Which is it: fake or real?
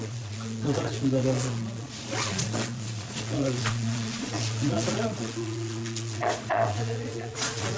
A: fake